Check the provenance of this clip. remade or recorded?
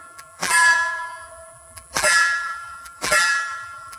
remade